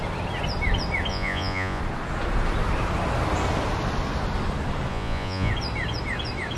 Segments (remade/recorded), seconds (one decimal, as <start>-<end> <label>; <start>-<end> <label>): 0.0-1.1 recorded; 1.1-1.8 remade; 1.8-4.9 recorded; 4.9-5.5 remade; 5.5-6.6 recorded